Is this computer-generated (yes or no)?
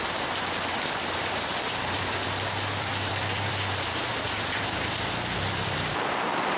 yes